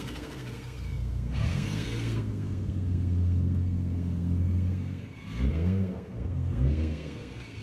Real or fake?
fake